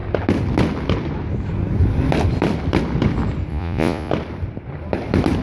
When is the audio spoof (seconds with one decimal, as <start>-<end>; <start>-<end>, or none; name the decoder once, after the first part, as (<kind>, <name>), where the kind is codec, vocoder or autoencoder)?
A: 3.5-4.1 (vocoder, Vocos)

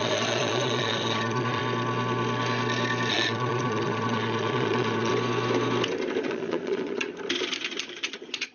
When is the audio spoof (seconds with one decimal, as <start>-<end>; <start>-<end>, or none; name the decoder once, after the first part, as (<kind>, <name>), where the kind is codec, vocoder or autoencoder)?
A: 0.0-1.6 (vocoder, Vocos); 3.1-5.1; 6.2-7.1; 8.0-8.5